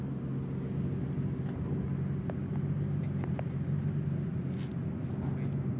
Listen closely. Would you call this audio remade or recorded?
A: recorded